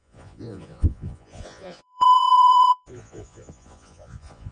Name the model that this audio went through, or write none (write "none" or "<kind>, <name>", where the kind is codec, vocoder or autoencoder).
vocoder, Vocos